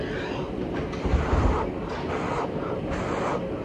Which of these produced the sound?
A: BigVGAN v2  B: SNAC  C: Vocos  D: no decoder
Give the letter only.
D